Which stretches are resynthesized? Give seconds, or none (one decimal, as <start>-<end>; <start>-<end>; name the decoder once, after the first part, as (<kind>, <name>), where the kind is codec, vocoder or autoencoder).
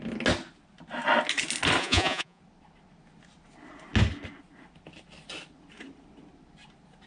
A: 1.8-2.4 (vocoder, Vocos)